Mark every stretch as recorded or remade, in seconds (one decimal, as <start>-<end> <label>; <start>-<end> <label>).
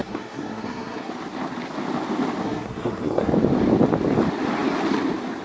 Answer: 0.0-1.1 remade; 1.1-2.4 recorded; 2.4-3.3 remade; 3.3-5.4 recorded